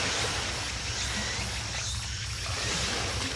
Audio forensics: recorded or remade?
recorded